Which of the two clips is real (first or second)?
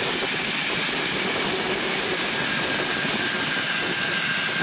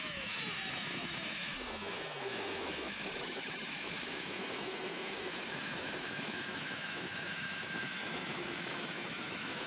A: first